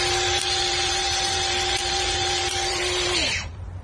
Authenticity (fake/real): fake